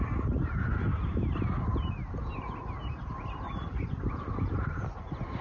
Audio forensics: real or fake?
real